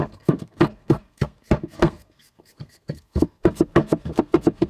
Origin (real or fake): fake